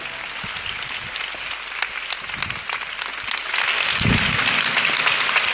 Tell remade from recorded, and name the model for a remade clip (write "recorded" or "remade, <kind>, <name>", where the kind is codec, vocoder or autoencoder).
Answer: recorded